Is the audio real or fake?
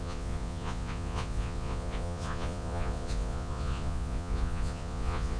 fake